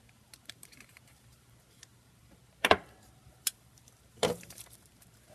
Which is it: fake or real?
fake